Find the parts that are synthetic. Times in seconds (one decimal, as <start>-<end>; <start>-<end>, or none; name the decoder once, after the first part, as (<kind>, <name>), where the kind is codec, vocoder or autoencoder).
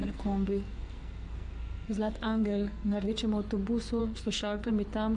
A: 0.0-3.1 (codec, SNAC); 4.0-4.7